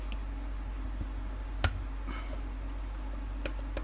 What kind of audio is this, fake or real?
real